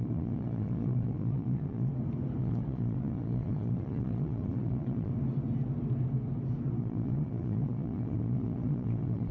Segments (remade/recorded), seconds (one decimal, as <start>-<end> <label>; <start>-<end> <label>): 0.0-1.9 remade; 1.9-2.4 recorded; 2.4-5.1 remade; 5.1-6.8 recorded; 6.8-9.3 remade